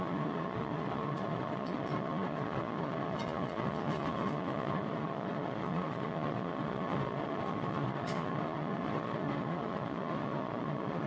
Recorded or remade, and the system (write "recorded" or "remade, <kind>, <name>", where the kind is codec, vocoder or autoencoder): remade, vocoder, Vocos